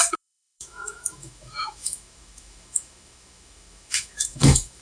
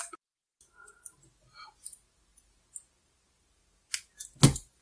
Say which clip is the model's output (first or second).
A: first